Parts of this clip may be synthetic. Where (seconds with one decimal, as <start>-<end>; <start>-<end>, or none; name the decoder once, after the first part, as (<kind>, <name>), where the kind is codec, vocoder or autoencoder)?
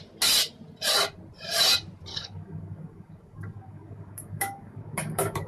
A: 2.1-5.5 (codec, DAC)